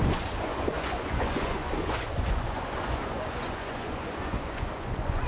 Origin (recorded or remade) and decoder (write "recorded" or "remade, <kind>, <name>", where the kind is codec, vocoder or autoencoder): remade, vocoder, Vocos